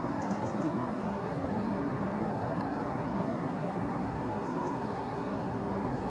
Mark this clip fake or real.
fake